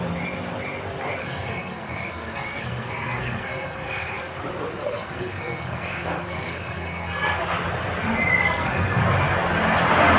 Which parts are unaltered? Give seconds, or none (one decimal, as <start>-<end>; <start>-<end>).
0.0-1.2; 4.3-4.8; 7.4-8.4; 9.0-10.2